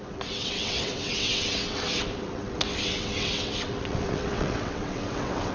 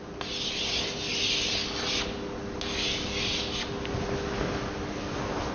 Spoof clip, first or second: first